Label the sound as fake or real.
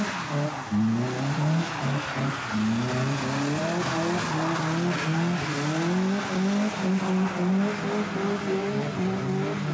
real